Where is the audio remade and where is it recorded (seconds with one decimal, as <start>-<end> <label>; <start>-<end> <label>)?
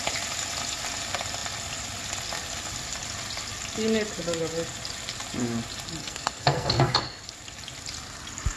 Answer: 0.0-6.0 recorded; 6.0-7.3 remade; 7.3-8.6 recorded